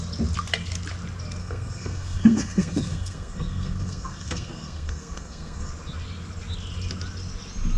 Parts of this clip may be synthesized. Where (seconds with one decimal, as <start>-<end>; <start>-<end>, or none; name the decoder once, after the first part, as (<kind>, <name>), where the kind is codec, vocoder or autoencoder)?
1.4-5.7 (codec, SNAC)